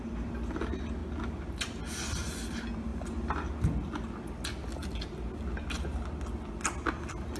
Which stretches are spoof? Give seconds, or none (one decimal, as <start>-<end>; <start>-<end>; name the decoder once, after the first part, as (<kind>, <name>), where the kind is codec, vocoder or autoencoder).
none